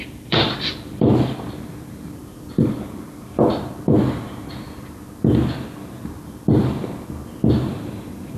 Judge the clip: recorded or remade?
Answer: remade